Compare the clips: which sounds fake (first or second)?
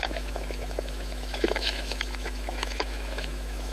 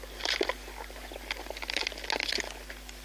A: first